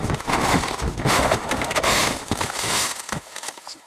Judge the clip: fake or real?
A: fake